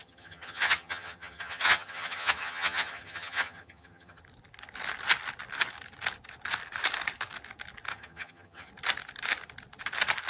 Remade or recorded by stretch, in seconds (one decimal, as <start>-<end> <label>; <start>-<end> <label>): 0.0-4.2 remade; 4.2-7.9 recorded; 7.9-8.7 remade; 8.7-10.3 recorded